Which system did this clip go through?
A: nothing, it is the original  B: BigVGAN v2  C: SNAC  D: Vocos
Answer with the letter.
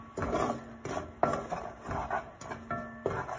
A